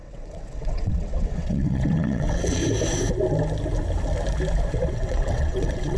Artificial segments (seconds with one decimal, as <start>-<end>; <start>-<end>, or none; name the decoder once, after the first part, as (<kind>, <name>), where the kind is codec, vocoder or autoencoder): 0.0-2.6 (vocoder, WaveNeXt); 4.9-6.0